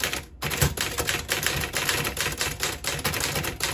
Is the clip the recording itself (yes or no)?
yes